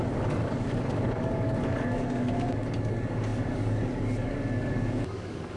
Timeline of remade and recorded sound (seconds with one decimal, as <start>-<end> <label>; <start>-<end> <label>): 0.0-5.6 remade